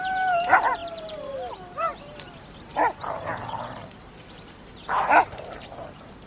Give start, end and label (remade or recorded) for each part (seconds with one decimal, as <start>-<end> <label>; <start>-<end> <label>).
0.0-1.9 remade; 1.9-2.8 recorded; 2.8-6.3 remade